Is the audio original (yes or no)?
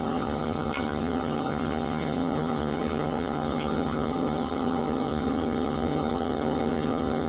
no